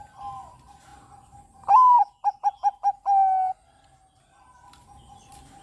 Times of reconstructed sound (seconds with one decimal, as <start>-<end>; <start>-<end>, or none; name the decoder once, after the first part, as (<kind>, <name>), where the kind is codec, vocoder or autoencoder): none